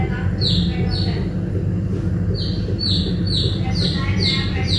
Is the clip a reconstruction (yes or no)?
no